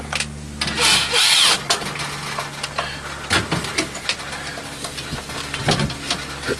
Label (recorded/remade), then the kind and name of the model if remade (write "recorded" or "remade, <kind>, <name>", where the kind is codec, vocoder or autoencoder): recorded